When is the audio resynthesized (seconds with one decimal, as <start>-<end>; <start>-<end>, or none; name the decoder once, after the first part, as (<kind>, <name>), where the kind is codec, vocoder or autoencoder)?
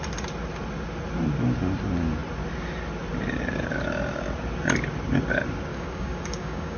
5.7-6.8 (codec, DAC)